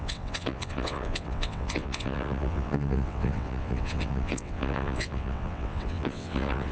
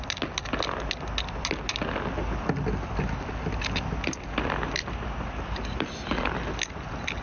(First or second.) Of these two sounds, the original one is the second